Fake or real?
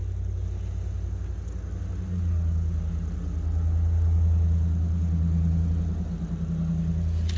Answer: real